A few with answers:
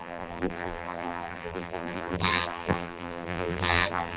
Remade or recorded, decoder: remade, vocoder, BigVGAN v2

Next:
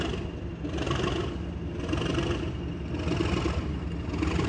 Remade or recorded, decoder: recorded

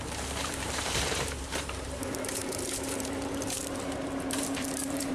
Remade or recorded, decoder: remade, vocoder, BigVGAN v2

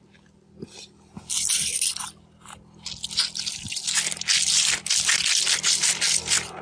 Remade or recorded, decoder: recorded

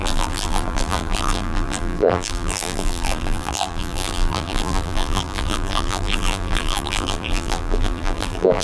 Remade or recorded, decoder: remade, vocoder, BigVGAN v2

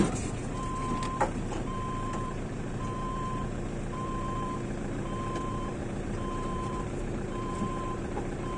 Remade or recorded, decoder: remade, vocoder, BigVGAN v2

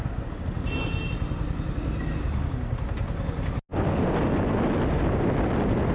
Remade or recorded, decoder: recorded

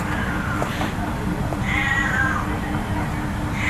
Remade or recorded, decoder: remade, vocoder, BigVGAN v2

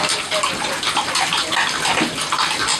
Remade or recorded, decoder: recorded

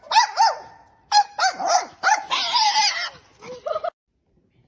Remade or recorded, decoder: recorded